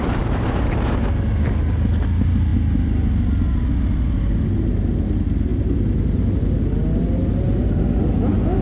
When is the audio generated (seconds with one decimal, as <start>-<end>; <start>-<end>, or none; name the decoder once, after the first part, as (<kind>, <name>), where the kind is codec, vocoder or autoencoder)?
none